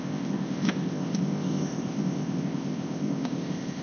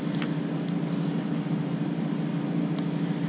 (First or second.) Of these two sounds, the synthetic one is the first